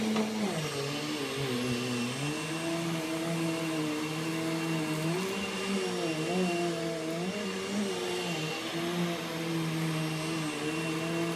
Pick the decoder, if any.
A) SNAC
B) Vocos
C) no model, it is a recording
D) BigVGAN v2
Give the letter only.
C